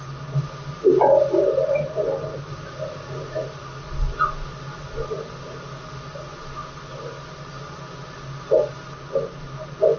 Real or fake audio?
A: real